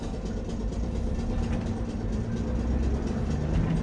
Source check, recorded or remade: recorded